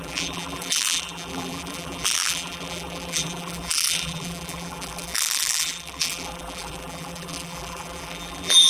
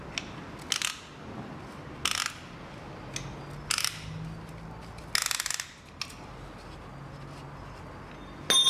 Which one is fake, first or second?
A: first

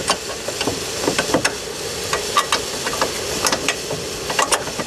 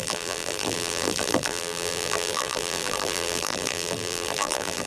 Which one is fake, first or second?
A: second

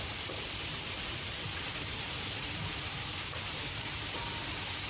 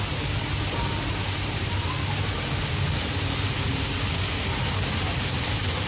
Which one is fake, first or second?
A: first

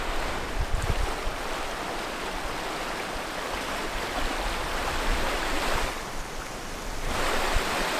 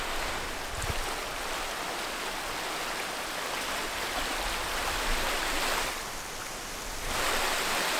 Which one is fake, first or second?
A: first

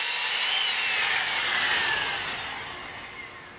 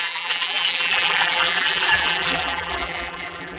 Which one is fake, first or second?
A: second